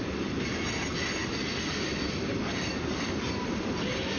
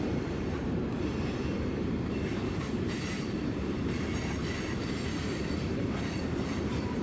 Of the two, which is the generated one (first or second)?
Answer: second